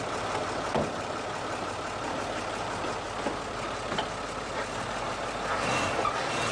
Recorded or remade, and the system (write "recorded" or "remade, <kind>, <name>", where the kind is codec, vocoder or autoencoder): recorded